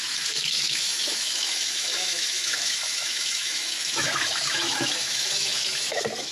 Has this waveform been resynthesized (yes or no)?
yes